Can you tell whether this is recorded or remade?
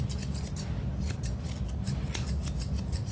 recorded